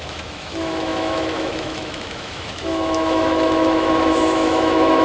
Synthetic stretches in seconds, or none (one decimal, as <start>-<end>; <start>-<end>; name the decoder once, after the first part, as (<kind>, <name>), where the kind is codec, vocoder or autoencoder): 0.0-5.0 (autoencoder, DAC-VAE)